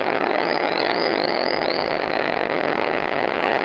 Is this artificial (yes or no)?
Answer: yes